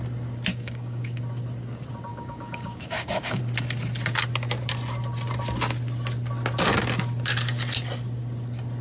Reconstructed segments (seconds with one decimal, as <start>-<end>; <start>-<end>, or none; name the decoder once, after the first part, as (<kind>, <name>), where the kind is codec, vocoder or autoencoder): 0.5-1.2 (codec, DAC); 2.1-3.4